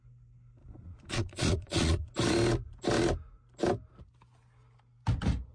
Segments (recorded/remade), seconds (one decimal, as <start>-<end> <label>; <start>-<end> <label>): 0.0-0.6 recorded; 0.6-2.1 remade; 2.1-5.5 recorded